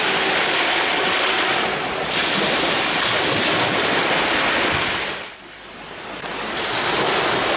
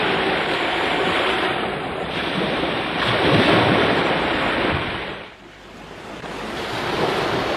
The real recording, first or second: first